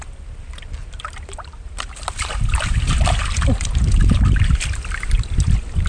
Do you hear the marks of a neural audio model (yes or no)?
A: no